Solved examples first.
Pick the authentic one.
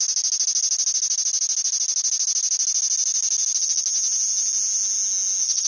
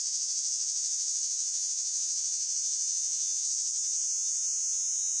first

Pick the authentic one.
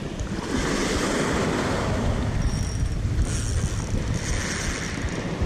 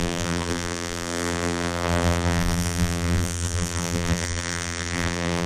first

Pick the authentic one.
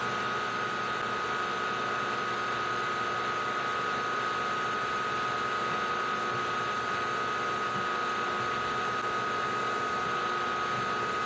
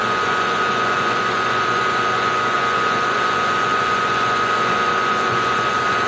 first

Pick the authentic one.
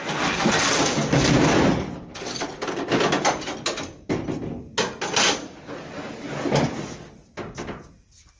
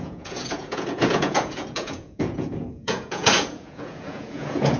first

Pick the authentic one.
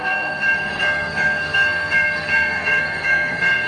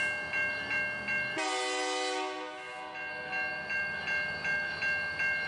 second